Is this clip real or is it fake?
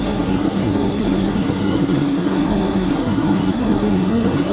fake